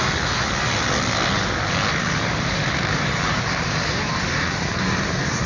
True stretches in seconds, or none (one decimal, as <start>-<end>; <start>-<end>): 0.0-1.9